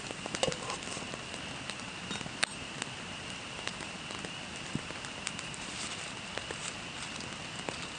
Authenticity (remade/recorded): recorded